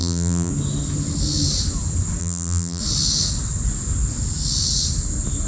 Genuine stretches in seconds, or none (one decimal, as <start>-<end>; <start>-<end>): 0.5-2.2; 2.8-5.5